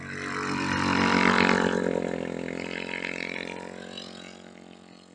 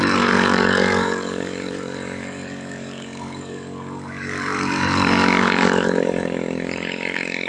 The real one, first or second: first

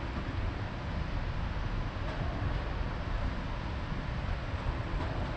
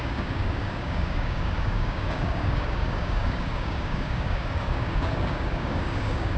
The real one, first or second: first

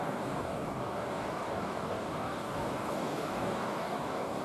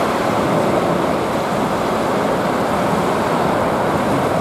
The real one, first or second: second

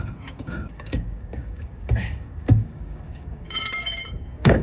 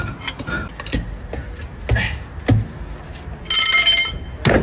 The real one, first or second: second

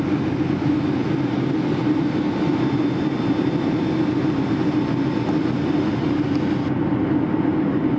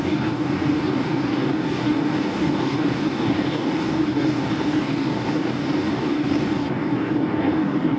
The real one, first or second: first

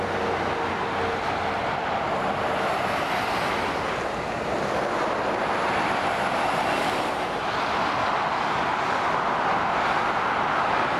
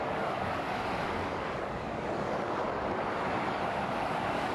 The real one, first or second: first